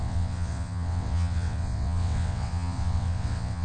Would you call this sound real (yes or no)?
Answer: no